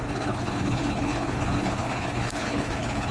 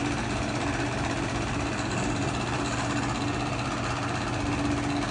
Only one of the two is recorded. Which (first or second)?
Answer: second